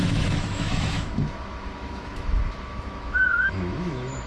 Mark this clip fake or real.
fake